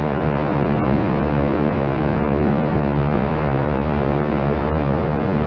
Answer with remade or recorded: remade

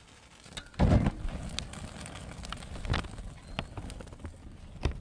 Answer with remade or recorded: recorded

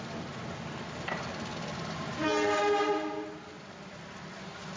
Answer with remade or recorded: recorded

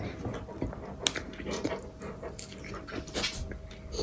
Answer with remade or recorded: recorded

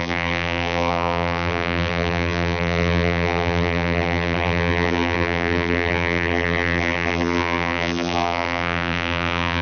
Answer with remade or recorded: remade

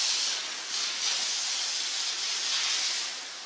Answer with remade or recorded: recorded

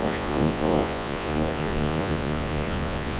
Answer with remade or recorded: remade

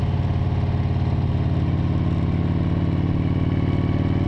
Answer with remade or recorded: recorded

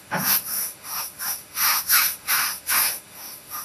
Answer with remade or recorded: remade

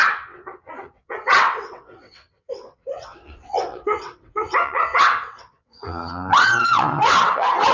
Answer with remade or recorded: remade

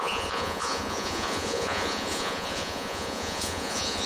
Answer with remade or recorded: remade